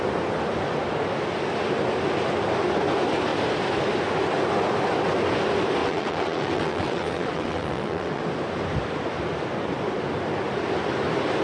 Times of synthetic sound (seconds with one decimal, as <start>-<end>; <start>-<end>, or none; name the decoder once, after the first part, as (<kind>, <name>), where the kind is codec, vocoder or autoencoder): 5.8-8.2 (vocoder, WaveNeXt)